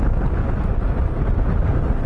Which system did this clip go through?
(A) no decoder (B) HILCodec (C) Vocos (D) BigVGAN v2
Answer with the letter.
A